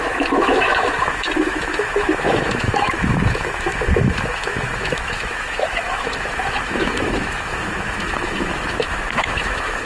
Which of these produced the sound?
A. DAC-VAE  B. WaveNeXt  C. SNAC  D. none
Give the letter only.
A